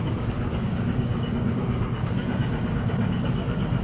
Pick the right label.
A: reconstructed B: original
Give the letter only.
A